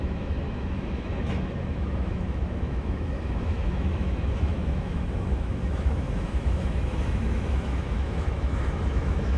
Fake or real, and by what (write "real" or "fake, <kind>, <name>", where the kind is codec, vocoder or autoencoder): fake, autoencoder, DAC-VAE